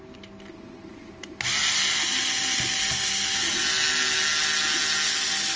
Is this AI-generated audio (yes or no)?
no